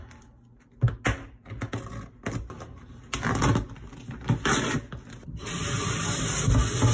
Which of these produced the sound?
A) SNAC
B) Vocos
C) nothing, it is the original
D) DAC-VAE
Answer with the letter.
C